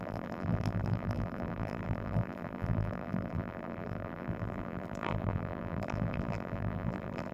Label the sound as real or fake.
fake